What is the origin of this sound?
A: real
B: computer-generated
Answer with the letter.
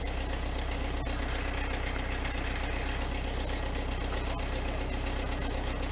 A